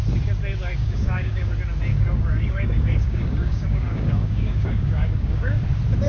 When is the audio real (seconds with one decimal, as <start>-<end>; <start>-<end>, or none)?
0.0-0.7; 1.5-1.9; 5.6-6.1

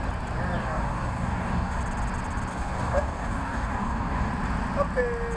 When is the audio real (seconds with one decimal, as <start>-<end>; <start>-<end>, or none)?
0.0-0.6; 1.8-2.5; 4.3-5.4

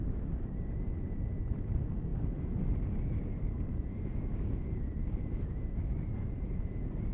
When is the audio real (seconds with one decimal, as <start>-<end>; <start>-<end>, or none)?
0.0-7.1

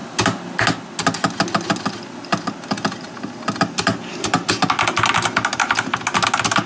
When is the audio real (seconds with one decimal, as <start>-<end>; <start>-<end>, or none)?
0.0-6.7

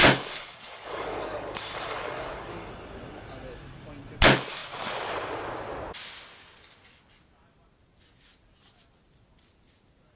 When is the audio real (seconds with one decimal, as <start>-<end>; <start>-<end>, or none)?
2.7-10.2

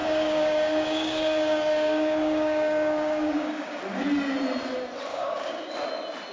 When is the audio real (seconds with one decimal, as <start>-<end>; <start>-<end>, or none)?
3.8-5.1; 5.7-6.3

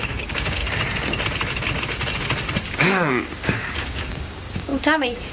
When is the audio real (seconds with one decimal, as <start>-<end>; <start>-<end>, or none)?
0.6-2.6